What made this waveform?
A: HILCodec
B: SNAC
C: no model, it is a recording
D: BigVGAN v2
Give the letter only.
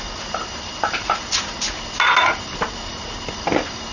C